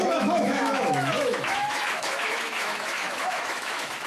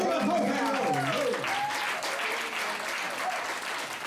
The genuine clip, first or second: second